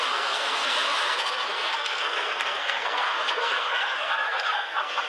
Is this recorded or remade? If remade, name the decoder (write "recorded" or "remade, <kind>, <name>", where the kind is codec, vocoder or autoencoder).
remade, codec, SNAC